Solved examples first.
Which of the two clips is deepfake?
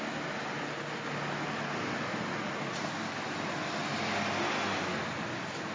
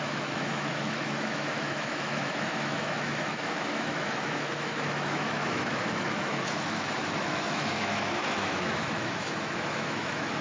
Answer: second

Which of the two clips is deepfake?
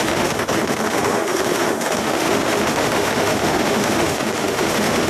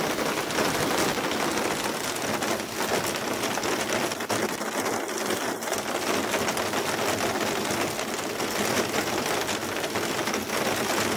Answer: first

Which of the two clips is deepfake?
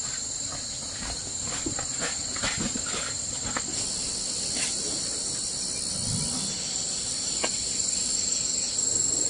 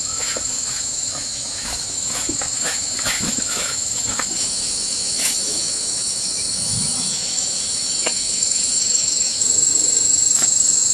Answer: second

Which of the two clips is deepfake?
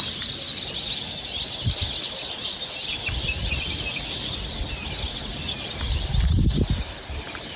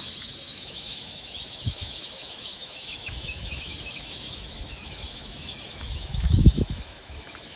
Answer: second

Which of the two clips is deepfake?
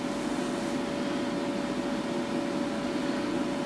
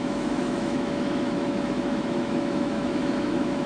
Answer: second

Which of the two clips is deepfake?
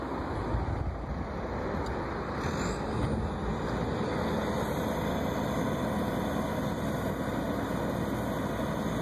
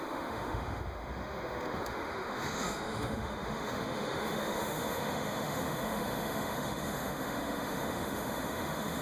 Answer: second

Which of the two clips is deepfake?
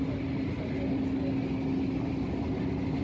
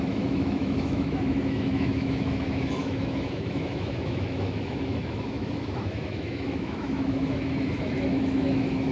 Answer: second